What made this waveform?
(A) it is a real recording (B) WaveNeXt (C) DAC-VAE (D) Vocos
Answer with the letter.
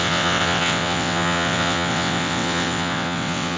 B